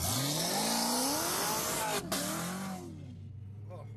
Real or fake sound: real